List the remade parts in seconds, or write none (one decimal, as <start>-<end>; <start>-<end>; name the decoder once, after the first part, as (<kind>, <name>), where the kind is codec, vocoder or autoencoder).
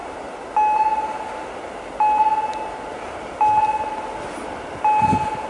none